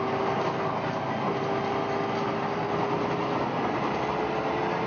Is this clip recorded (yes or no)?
yes